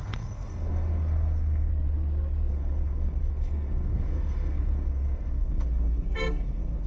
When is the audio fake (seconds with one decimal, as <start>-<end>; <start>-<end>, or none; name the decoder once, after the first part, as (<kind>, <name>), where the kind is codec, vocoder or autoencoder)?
0.0-1.7 (codec, SNAC); 2.5-6.9